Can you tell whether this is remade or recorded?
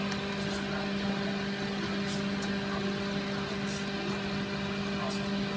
recorded